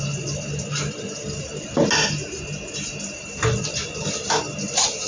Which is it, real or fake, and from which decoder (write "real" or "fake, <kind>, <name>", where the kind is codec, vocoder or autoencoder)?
real